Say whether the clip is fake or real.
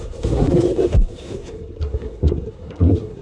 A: fake